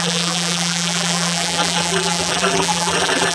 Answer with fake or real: fake